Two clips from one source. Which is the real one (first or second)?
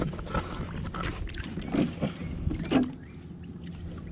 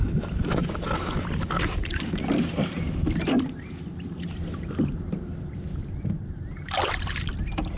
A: first